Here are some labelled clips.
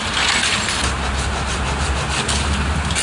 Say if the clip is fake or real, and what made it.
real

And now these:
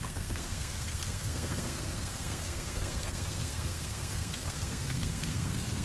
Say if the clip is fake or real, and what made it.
fake, codec, SNAC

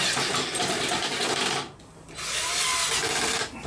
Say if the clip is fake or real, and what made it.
real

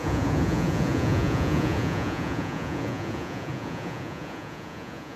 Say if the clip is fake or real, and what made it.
fake, vocoder, Vocos